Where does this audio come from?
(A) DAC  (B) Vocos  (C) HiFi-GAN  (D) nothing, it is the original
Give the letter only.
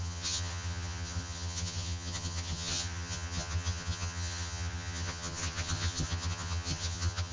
C